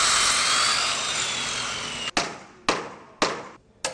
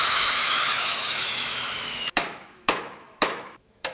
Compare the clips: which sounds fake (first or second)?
second